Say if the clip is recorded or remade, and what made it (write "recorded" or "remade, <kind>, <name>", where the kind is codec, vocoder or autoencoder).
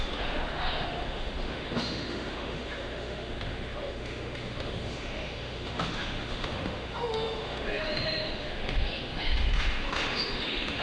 remade, autoencoder, DAC-VAE